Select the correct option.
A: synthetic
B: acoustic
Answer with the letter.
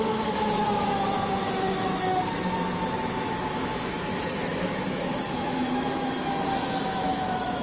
A